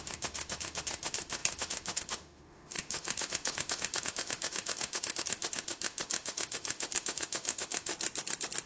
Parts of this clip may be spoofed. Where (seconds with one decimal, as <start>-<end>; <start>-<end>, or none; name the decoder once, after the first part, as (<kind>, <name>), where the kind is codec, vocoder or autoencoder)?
0.0-7.9 (autoencoder, DAC-VAE)